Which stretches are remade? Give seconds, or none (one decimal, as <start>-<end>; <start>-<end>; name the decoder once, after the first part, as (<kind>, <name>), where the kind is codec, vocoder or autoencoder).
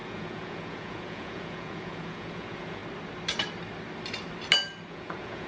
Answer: 0.0-2.8 (vocoder, Vocos); 4.9-5.5